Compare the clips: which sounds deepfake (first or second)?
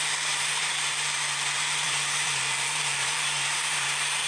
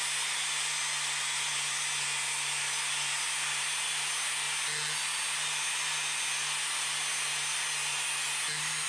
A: first